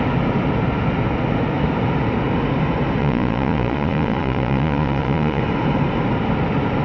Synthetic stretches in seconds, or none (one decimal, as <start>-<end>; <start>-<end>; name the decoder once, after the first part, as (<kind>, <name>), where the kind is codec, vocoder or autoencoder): 3.0-5.4 (vocoder, Vocos)